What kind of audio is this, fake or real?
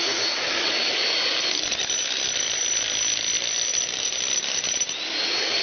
real